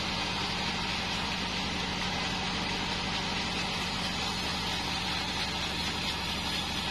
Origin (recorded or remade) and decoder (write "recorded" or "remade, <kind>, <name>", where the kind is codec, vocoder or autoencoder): recorded